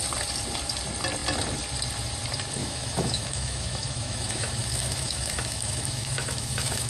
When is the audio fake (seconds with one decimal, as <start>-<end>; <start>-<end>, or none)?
2.6-6.9